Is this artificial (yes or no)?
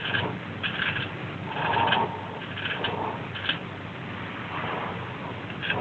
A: no